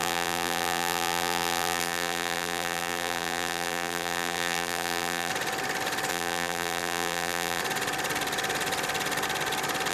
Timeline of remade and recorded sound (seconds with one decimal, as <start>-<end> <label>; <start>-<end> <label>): 0.0-5.3 remade; 5.3-6.1 recorded; 6.1-7.6 remade; 7.6-9.9 recorded